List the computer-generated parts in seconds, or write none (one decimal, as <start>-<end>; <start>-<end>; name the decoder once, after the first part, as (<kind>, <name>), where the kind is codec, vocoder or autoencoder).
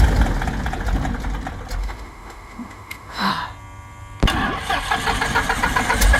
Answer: 1.8-3.3 (autoencoder, DAC-VAE)